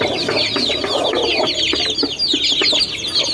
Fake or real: real